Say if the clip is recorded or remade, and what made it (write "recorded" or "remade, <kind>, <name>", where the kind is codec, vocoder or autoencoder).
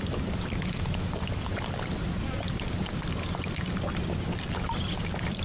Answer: remade, vocoder, BigVGAN v2